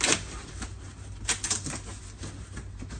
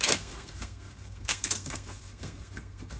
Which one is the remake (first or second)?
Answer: second